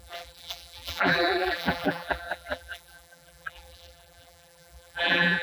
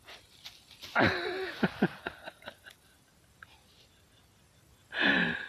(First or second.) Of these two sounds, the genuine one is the second